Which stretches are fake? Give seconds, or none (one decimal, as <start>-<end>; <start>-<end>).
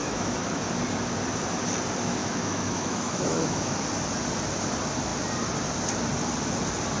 0.0-0.6; 2.2-3.7